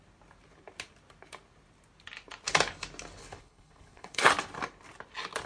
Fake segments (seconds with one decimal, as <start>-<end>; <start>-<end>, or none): 3.2-4.3

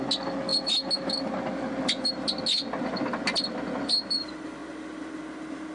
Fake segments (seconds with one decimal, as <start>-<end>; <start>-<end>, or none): none

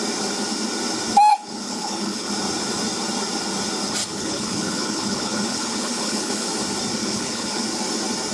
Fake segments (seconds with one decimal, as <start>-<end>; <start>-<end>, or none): 1.3-2.3; 4.0-6.5; 7.0-7.6

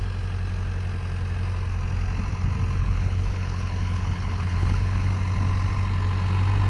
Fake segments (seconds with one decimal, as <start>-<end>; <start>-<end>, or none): 2.8-5.1

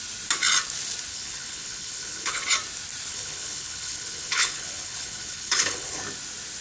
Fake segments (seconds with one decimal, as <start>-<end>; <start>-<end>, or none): 1.1-2.4; 3.1-6.0

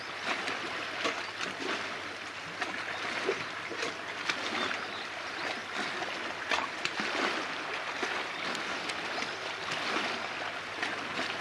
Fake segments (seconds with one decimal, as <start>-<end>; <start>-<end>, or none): none

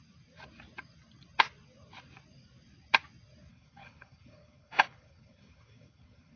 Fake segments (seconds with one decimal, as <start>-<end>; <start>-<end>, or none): 3.5-6.4

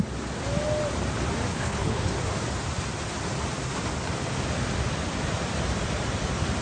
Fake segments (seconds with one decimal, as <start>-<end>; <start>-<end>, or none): 1.5-2.1